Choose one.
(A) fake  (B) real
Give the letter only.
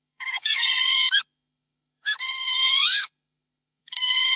A